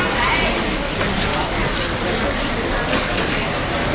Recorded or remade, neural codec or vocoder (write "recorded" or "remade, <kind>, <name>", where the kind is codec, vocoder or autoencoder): recorded